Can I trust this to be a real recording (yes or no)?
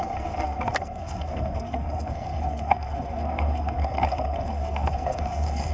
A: no